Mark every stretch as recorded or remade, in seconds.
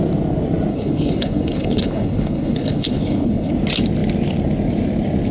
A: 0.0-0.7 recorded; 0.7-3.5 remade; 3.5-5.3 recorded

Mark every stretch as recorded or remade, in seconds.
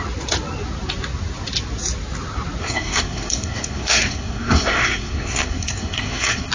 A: 0.0-2.6 recorded; 2.6-6.5 remade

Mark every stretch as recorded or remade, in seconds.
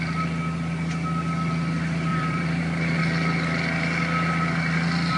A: 0.0-2.1 recorded; 2.1-3.0 remade; 3.0-5.2 recorded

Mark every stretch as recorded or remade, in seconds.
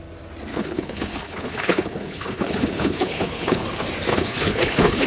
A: 0.0-0.5 recorded; 0.5-3.6 remade; 3.6-4.1 recorded; 4.1-5.1 remade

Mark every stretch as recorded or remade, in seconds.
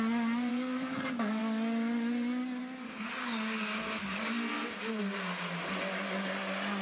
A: 0.0-0.5 recorded; 0.5-1.4 remade; 1.4-6.8 recorded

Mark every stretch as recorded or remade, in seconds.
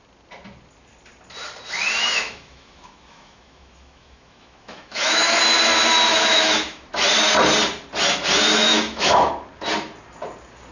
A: 0.0-2.0 recorded; 2.0-5.4 remade; 5.4-6.1 recorded; 6.1-6.9 remade; 6.9-8.5 recorded; 8.5-9.3 remade; 9.3-10.7 recorded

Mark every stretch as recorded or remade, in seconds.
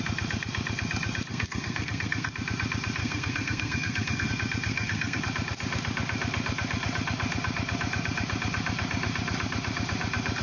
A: 0.0-1.3 recorded; 1.3-2.3 remade; 2.3-3.0 recorded; 3.0-4.3 remade; 4.3-4.7 recorded; 4.7-5.2 remade; 5.2-10.4 recorded